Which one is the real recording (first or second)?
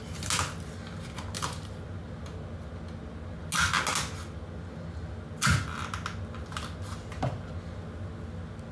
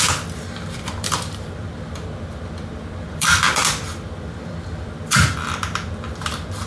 first